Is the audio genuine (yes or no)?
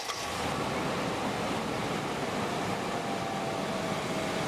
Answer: yes